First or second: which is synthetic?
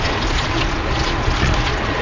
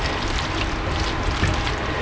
first